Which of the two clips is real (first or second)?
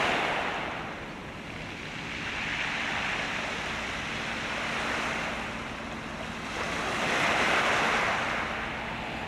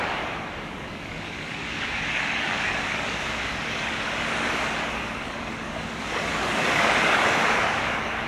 first